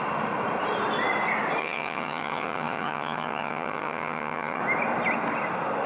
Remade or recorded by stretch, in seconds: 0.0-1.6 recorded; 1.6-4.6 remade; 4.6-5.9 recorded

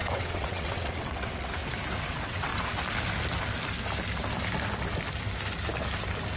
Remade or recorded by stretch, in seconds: 0.0-1.6 remade; 1.6-2.1 recorded; 2.1-2.5 remade; 2.5-6.4 recorded

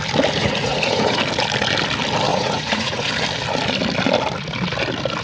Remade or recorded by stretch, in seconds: 0.0-0.4 recorded; 0.4-1.2 remade; 1.2-2.3 recorded; 2.3-3.1 remade; 3.1-5.2 recorded

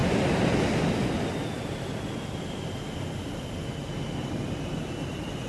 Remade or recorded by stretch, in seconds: 0.0-5.5 recorded

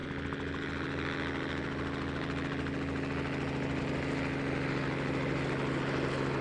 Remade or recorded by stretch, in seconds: 0.0-6.4 recorded